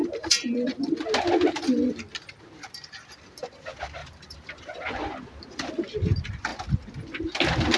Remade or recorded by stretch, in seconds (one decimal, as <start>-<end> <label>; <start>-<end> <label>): 0.0-0.9 remade; 0.9-4.0 recorded; 4.0-5.7 remade; 5.7-7.8 recorded